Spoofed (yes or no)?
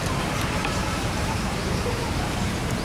yes